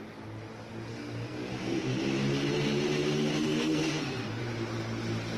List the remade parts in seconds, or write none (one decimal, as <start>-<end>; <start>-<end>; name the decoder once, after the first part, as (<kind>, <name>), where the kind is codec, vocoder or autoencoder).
0.9-2.0 (codec, SNAC); 3.3-4.4